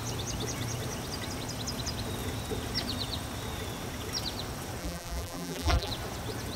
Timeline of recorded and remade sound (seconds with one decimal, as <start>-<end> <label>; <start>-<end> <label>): 0.0-4.8 recorded; 4.8-5.9 remade; 5.9-6.6 recorded